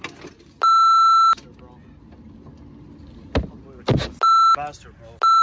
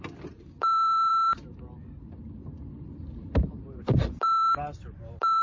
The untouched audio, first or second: first